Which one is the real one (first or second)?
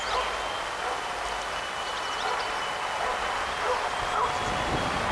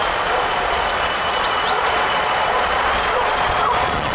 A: first